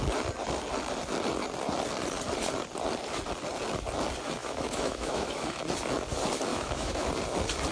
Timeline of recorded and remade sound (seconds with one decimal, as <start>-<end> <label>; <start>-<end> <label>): 0.0-4.4 recorded; 4.4-5.6 remade; 5.6-6.5 recorded; 6.5-7.1 remade; 7.1-7.7 recorded